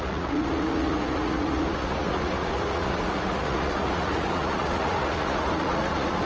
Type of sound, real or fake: fake